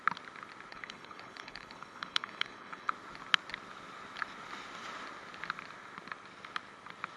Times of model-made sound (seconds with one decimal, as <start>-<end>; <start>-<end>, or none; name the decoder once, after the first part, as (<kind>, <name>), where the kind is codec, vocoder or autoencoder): 0.7-2.9 (codec, HILCodec)